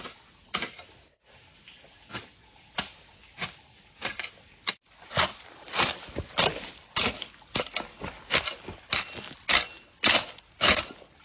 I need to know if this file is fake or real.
real